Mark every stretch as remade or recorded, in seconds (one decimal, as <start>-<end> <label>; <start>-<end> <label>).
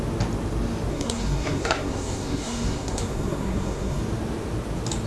0.0-0.9 recorded; 0.9-4.0 remade; 4.0-5.1 recorded